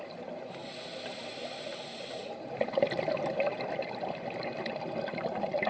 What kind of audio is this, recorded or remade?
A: recorded